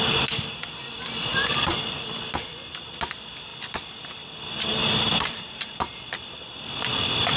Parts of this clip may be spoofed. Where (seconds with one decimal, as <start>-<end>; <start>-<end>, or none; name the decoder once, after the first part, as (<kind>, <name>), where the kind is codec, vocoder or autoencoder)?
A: 1.3-2.2 (vocoder, BigVGAN v2); 4.7-6.5